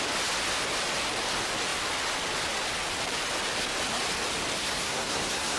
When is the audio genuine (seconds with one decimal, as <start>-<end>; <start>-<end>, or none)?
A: 0.0-4.6